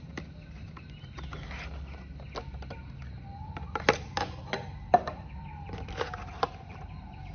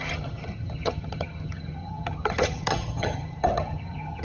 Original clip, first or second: first